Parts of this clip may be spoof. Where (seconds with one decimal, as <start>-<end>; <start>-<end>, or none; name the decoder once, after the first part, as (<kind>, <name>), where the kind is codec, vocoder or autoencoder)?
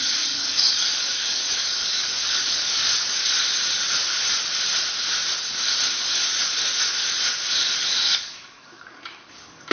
0.0-3.2 (codec, DAC); 7.8-9.7